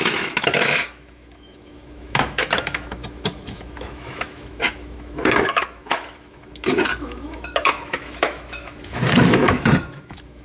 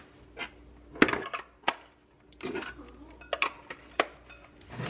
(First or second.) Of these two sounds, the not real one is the first